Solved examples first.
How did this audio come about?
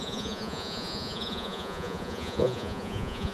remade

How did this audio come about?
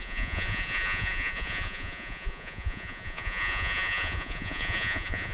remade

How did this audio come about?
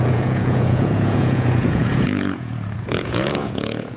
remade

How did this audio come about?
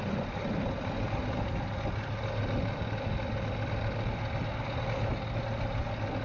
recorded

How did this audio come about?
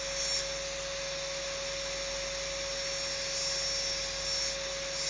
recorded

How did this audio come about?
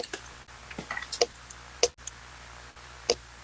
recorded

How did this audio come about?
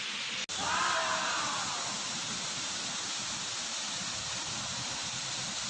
recorded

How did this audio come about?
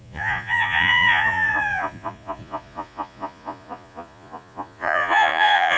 remade